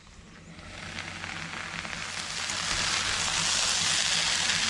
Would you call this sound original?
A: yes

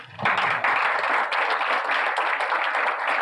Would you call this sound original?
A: yes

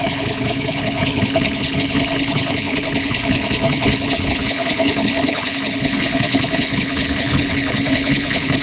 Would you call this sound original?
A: no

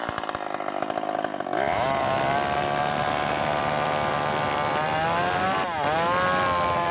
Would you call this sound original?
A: yes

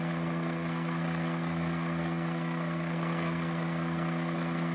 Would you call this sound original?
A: no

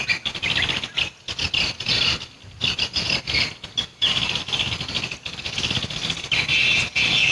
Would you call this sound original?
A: yes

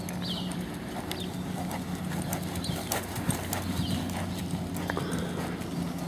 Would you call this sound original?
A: yes